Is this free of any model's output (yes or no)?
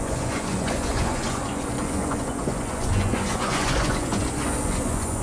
no